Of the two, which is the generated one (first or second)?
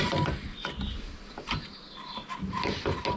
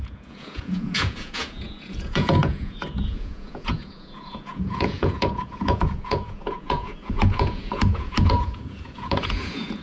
second